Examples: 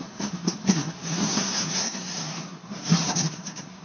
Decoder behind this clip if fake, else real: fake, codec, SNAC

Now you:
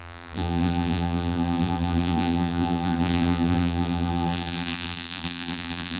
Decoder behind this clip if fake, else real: fake, vocoder, BigVGAN v2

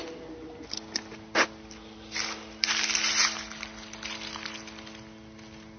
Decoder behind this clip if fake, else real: real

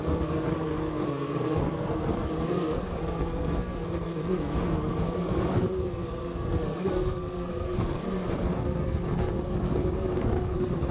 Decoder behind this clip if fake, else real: fake, codec, SNAC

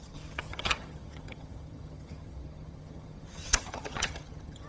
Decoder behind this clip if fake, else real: fake, vocoder, HiFi-GAN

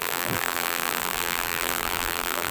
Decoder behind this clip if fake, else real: fake, vocoder, BigVGAN v2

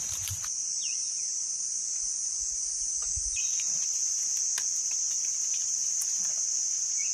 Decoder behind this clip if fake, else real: fake, vocoder, BigVGAN v2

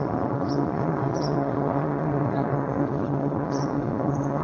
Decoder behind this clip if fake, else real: fake, vocoder, Vocos